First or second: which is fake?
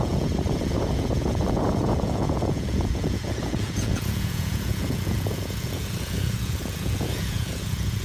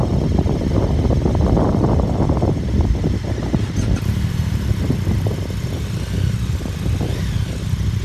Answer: first